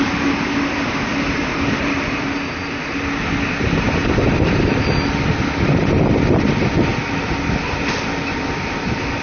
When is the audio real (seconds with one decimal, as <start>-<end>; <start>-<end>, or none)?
0.0-9.2